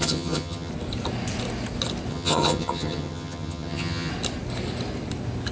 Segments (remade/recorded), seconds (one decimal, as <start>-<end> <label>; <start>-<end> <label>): 0.0-0.7 remade; 0.7-2.1 recorded; 2.1-4.1 remade; 4.1-5.5 recorded

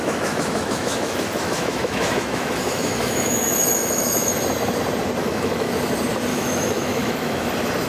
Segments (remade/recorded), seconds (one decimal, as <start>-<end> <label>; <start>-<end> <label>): 0.0-4.3 remade; 4.3-5.2 recorded; 5.2-5.7 remade; 5.7-6.3 recorded; 6.3-7.5 remade; 7.5-7.9 recorded

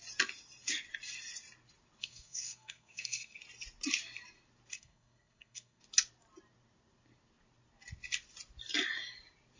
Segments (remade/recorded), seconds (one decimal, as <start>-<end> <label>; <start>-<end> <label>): 0.0-2.0 recorded; 2.0-3.4 remade; 3.4-4.7 recorded; 4.7-5.8 remade; 5.8-9.6 recorded

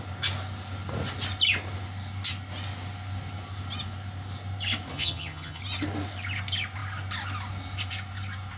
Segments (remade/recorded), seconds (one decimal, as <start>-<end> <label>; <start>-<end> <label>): 0.0-4.9 recorded; 4.9-5.6 remade; 5.6-8.6 recorded

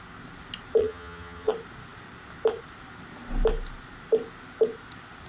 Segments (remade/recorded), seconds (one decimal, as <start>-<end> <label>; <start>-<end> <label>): 0.0-0.8 recorded; 0.8-1.5 remade; 1.5-5.3 recorded